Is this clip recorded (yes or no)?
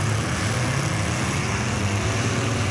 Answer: yes